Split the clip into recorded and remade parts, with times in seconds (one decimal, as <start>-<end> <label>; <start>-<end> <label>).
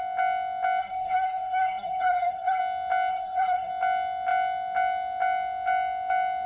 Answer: 0.0-0.8 recorded; 0.8-2.6 remade; 2.6-3.1 recorded; 3.1-3.7 remade; 3.7-6.5 recorded